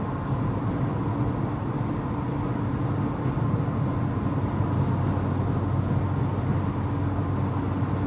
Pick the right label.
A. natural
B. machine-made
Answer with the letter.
A